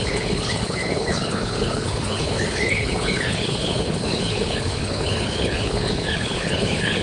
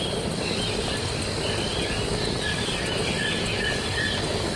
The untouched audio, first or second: second